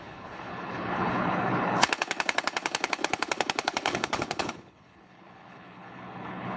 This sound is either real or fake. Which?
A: fake